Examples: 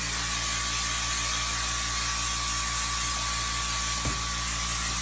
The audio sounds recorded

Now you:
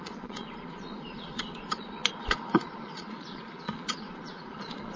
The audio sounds remade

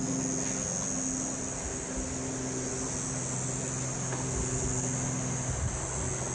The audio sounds recorded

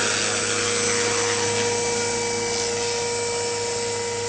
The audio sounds recorded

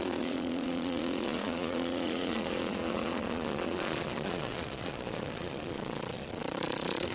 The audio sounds remade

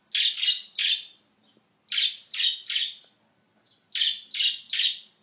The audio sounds recorded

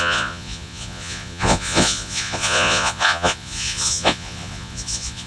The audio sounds remade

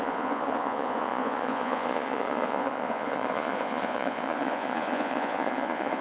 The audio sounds remade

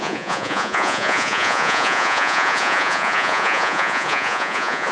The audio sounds remade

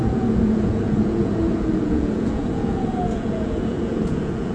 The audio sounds remade